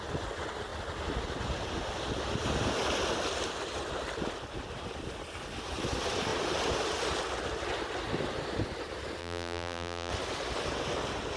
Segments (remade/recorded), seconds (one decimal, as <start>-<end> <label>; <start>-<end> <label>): 0.0-9.2 recorded; 9.2-10.1 remade; 10.1-11.4 recorded